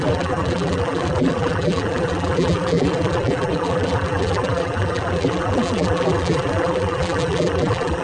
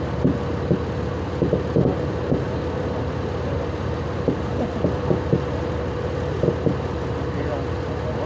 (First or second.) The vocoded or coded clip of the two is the first